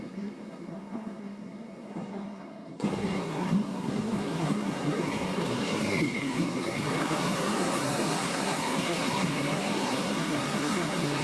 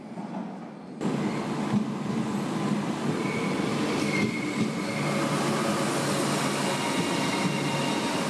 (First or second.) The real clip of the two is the second